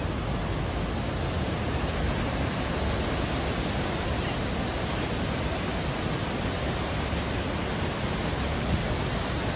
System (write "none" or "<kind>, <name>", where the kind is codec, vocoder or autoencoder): none